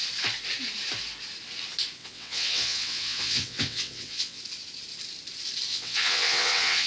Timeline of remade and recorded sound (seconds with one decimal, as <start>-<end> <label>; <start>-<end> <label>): 0.0-2.0 recorded; 2.0-4.4 remade; 4.4-5.7 recorded; 5.7-6.9 remade